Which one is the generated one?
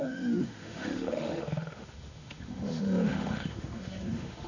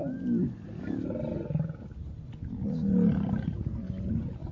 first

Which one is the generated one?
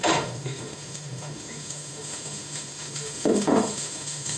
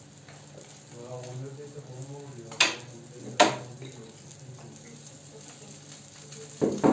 first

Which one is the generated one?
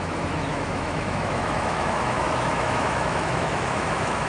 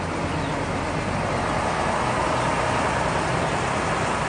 first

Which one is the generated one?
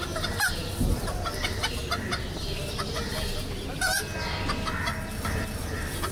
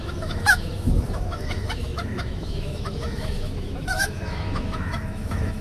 second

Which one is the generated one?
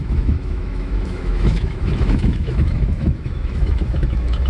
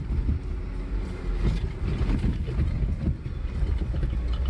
first